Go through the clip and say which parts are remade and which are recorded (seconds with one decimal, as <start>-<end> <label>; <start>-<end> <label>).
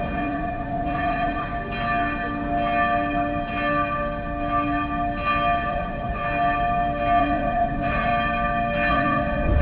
0.0-1.5 remade; 1.5-5.7 recorded; 5.7-6.2 remade; 6.2-7.2 recorded; 7.2-8.1 remade; 8.1-8.9 recorded; 8.9-9.6 remade